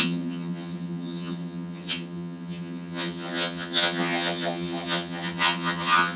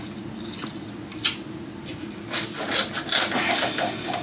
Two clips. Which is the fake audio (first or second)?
first